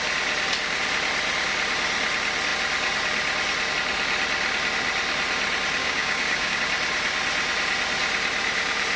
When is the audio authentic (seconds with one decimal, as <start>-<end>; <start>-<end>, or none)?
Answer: 0.0-5.8; 6.6-9.0